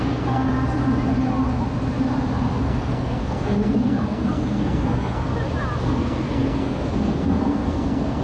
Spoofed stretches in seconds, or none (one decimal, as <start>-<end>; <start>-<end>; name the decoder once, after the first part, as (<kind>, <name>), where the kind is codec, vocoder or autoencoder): 0.0-0.5 (codec, SNAC); 2.6-5.3; 5.8-8.2

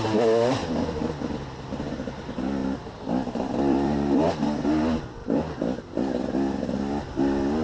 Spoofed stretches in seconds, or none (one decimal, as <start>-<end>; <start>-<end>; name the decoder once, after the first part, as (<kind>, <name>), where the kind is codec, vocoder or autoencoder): 0.6-1.6 (vocoder, BigVGAN v2); 2.6-4.3; 5.2-5.8

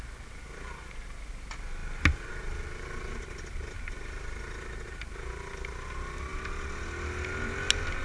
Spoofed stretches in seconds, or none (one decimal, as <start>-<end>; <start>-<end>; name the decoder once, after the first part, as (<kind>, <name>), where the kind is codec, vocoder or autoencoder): none

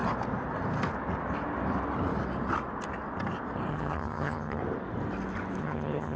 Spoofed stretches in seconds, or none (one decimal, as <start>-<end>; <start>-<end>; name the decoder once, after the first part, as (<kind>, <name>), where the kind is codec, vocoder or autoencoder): 3.7-4.6 (vocoder, HiFi-GAN); 5.6-6.2

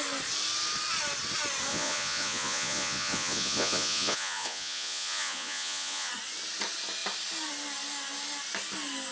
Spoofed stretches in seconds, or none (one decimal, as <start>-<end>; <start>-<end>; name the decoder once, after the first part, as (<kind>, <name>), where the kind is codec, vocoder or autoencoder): 1.7-6.1 (vocoder, Vocos)

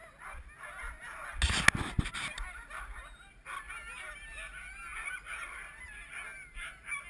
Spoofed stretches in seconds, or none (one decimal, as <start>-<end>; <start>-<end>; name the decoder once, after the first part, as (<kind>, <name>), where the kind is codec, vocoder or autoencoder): none